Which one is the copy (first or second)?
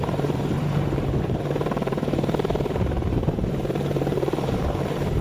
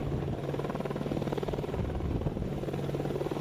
first